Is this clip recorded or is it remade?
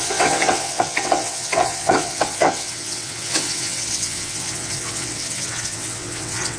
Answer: remade